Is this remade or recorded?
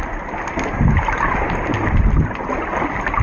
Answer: recorded